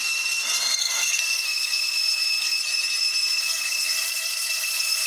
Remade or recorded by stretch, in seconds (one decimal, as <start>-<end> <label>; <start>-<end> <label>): 0.0-0.8 recorded; 0.8-2.6 remade; 2.6-3.4 recorded; 3.4-5.1 remade